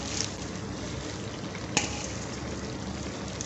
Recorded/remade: recorded